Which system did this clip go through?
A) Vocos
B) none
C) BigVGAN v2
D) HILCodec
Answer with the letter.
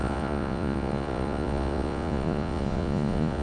A